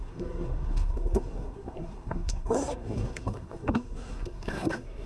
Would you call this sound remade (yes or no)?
yes